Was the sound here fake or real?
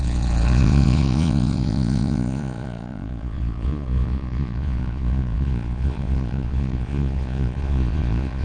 fake